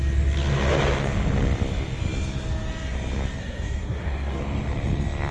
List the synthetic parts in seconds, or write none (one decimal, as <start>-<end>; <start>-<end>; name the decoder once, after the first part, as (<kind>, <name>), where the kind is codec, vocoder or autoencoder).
3.4-4.4 (codec, SNAC)